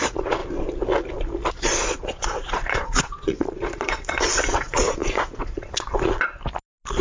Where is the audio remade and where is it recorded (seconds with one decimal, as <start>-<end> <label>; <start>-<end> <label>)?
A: 0.0-0.4 remade; 0.4-1.5 recorded; 1.5-6.3 remade; 6.3-7.0 recorded